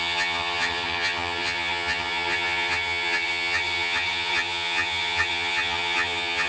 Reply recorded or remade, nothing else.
remade